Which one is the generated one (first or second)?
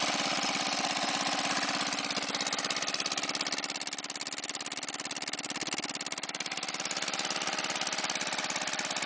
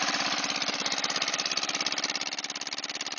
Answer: second